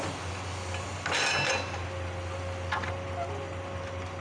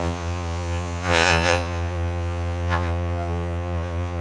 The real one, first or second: first